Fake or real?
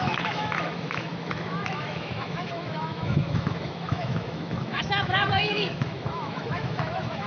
fake